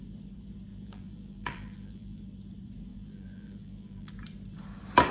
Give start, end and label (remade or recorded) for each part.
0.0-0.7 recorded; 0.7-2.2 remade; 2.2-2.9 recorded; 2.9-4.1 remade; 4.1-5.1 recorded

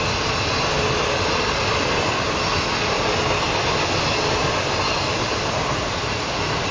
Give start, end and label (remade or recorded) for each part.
0.0-6.7 recorded

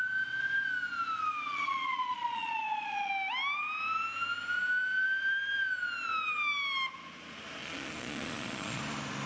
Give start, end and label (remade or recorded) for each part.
0.0-1.5 recorded; 1.5-3.1 remade; 3.1-7.6 recorded; 7.6-8.8 remade; 8.8-9.3 recorded

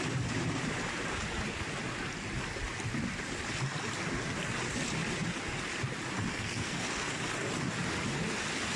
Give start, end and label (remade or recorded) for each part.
0.0-6.3 recorded; 6.3-7.2 remade; 7.2-8.8 recorded

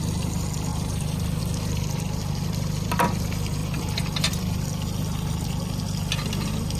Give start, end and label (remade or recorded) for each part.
0.0-0.7 recorded; 0.7-1.4 remade; 1.4-3.6 recorded; 3.6-4.4 remade; 4.4-6.8 recorded

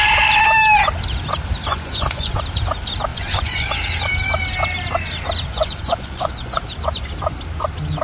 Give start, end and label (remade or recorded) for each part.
0.0-1.7 recorded; 1.7-2.4 remade; 2.4-3.1 recorded; 3.1-3.7 remade; 3.7-5.5 recorded; 5.5-6.6 remade; 6.6-8.0 recorded

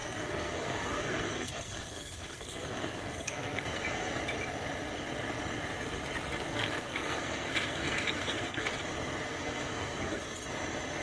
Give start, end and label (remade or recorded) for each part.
0.0-4.1 remade; 4.1-6.5 recorded; 6.5-8.7 remade; 8.7-9.3 recorded; 9.3-10.2 remade; 10.2-11.0 recorded